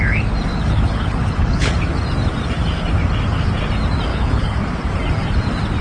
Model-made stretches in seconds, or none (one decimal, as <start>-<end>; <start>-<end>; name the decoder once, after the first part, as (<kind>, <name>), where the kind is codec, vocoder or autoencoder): 0.5-1.7 (codec, HILCodec); 4.1-4.6